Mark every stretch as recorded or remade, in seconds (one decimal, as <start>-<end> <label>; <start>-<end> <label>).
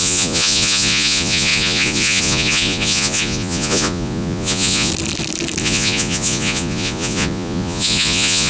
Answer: 0.0-4.9 remade; 4.9-5.6 recorded; 5.6-8.5 remade